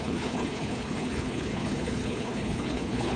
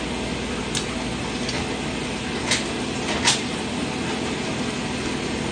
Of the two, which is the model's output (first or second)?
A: first